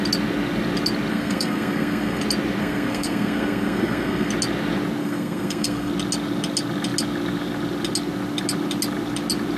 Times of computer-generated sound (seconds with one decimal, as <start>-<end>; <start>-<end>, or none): 1.1-2.2; 2.6-4.3; 5.0-5.9